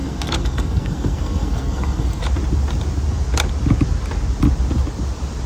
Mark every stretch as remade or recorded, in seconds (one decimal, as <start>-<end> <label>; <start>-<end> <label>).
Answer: 0.0-2.2 remade; 2.2-5.5 recorded